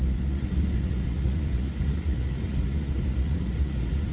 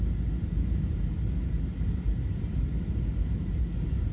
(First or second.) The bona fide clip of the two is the second